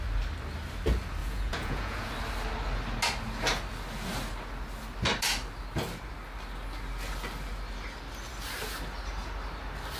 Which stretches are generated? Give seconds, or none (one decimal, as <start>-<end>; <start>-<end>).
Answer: 1.2-2.1